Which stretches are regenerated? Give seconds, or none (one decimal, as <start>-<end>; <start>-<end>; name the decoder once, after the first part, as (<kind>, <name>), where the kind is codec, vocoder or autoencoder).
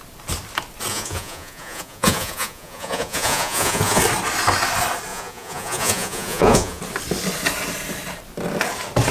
0.9-4.0 (vocoder, Vocos); 5.1-6.8